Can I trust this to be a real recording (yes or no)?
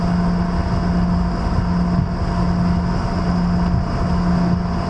yes